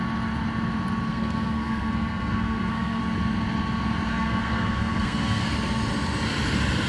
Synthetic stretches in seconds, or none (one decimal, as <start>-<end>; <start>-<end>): 1.1-3.0; 4.1-5.5